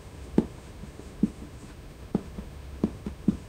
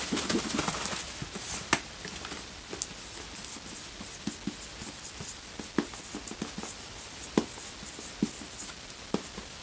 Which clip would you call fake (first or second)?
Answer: first